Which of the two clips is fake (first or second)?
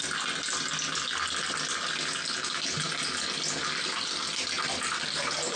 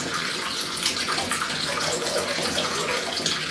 second